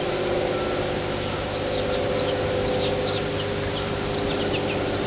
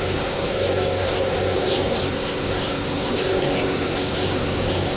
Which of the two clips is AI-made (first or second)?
second